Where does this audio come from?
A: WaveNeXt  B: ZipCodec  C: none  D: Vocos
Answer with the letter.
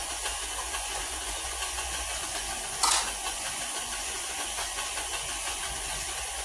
D